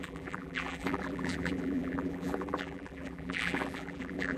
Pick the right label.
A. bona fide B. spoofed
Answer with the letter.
B